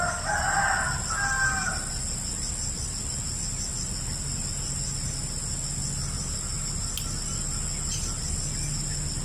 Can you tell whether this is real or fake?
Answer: real